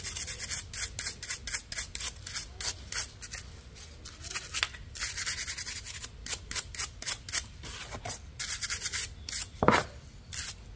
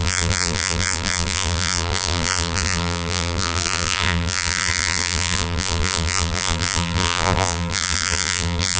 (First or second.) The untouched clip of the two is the first